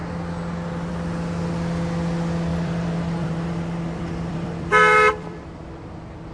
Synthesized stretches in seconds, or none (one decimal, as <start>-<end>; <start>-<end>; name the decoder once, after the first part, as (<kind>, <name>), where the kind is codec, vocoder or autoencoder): 2.5-5.6 (vocoder, BigVGAN v2)